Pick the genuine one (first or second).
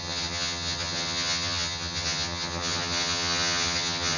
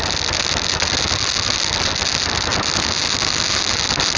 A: second